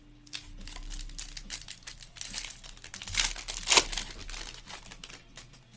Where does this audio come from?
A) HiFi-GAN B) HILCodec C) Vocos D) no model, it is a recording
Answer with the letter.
D